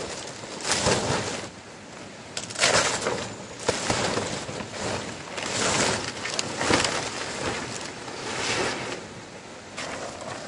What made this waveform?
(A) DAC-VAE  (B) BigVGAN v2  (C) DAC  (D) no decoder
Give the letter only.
D